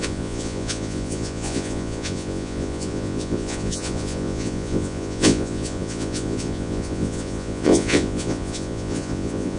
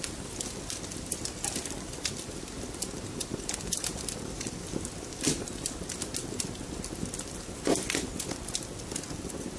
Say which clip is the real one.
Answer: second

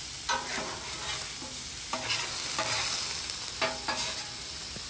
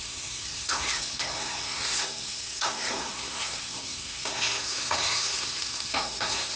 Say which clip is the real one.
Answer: first